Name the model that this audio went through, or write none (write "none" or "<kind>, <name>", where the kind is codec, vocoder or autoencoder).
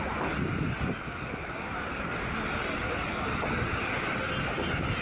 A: none